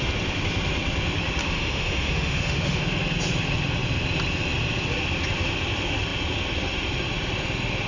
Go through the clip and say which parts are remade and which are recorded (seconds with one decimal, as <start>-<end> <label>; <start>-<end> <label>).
0.0-1.4 recorded; 1.4-2.8 remade; 2.8-7.9 recorded